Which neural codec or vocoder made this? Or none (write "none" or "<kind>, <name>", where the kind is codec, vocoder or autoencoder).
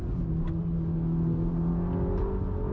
none